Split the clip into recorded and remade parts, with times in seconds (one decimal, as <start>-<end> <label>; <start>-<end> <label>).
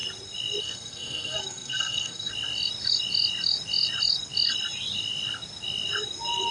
0.0-0.6 recorded; 0.6-2.3 remade; 2.3-6.5 recorded